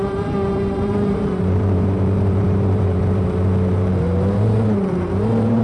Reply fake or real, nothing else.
fake